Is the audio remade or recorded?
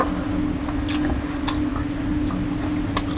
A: recorded